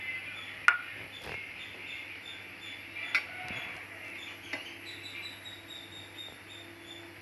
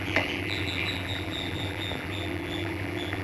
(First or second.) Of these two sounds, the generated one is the second